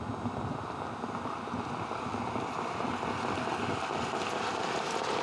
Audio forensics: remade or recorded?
recorded